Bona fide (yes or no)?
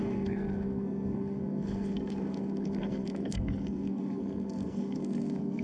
no